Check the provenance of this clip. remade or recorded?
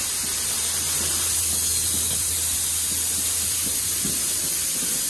recorded